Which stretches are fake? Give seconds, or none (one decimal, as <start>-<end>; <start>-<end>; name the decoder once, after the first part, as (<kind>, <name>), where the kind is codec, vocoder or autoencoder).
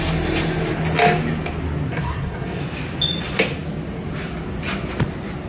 1.9-2.6 (codec, SNAC)